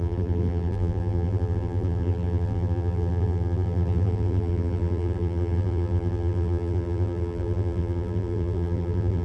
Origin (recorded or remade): remade